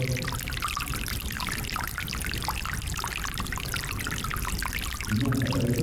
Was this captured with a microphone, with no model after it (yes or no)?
yes